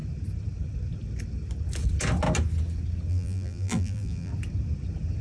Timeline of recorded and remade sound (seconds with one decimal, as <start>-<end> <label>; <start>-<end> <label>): 0.0-3.1 recorded; 3.1-4.3 remade; 4.3-5.2 recorded